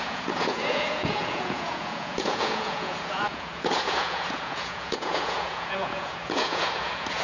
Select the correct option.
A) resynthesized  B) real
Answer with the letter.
A